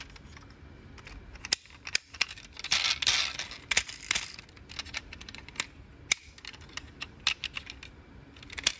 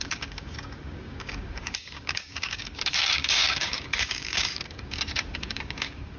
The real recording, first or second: first